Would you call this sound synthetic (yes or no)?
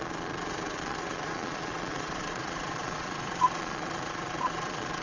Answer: yes